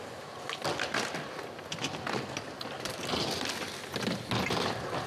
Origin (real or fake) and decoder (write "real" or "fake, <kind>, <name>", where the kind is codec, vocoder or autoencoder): real